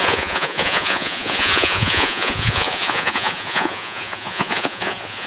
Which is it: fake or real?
fake